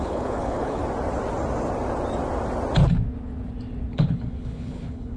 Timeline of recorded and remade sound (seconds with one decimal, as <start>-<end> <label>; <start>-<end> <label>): 0.0-0.8 remade; 0.8-3.9 recorded; 3.9-5.2 remade